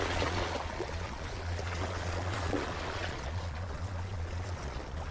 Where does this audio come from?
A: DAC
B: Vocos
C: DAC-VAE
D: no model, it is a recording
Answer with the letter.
B